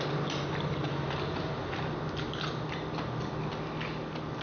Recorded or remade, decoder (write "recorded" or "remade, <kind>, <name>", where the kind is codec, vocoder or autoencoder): recorded